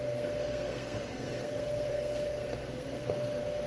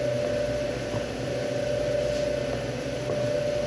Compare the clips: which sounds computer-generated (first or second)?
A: first